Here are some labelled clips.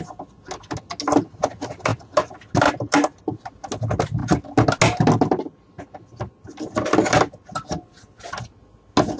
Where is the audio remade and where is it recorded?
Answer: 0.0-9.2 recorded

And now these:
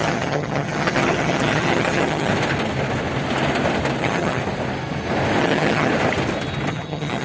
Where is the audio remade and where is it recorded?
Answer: 0.0-2.3 remade; 2.3-4.0 recorded; 4.0-4.4 remade; 4.4-5.4 recorded; 5.4-5.9 remade; 5.9-6.7 recorded; 6.7-7.2 remade

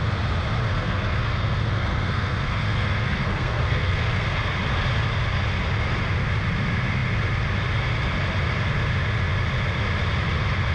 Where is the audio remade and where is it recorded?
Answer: 0.0-0.7 recorded; 0.7-4.4 remade; 4.4-10.7 recorded

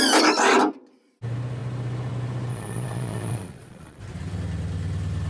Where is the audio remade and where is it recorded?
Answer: 0.0-2.5 recorded; 2.5-4.0 remade; 4.0-5.3 recorded

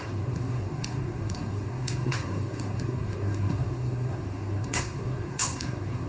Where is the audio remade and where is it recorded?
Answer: 0.0-6.1 remade

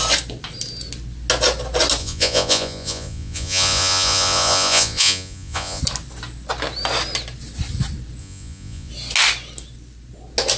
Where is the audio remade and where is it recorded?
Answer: 0.0-2.0 recorded; 2.0-5.8 remade; 5.8-8.2 recorded; 8.2-8.9 remade; 8.9-10.6 recorded

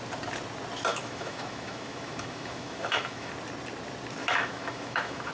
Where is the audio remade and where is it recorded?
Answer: 0.0-0.9 recorded; 0.9-3.3 remade; 3.3-4.2 recorded; 4.2-5.3 remade

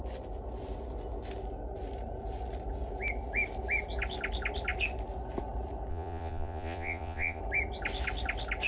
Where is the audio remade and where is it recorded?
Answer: 0.0-5.9 recorded; 5.9-7.4 remade; 7.4-8.7 recorded